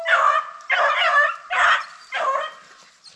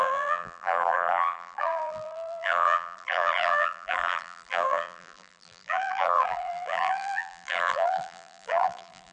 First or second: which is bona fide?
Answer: first